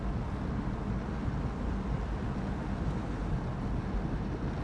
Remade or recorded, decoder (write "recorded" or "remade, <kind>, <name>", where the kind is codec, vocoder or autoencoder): recorded